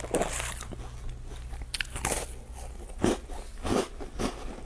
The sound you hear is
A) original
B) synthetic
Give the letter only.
A